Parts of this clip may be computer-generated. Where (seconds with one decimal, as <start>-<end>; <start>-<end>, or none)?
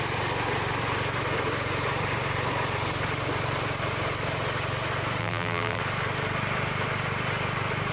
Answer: 5.2-5.8